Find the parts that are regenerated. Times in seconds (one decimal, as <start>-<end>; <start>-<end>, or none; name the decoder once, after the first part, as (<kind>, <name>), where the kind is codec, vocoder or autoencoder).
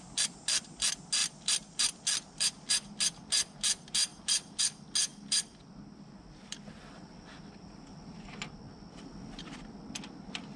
1.2-2.0 (vocoder, BigVGAN v2); 5.1-8.3